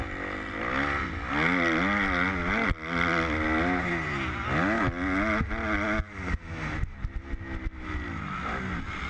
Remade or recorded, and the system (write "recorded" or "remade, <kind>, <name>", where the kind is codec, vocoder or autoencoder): recorded